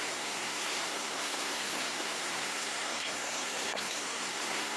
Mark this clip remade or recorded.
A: remade